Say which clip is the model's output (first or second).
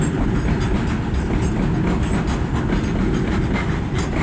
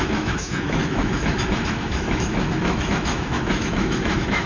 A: second